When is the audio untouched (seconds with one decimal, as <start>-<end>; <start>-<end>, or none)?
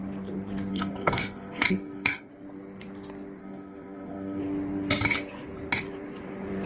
0.0-0.7; 2.3-3.4; 4.4-6.7